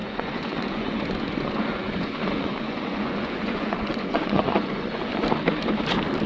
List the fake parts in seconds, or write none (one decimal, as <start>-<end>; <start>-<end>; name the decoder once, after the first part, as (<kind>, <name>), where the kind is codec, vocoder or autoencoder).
0.0-5.1 (vocoder, Vocos)